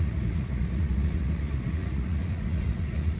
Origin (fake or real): fake